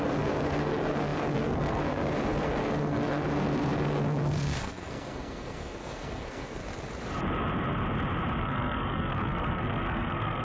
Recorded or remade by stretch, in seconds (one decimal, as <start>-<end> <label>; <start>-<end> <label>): 0.0-6.6 remade; 6.6-8.4 recorded; 8.4-10.4 remade